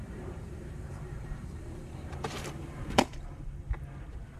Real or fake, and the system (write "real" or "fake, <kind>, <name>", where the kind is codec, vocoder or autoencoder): fake, vocoder, BigVGAN v2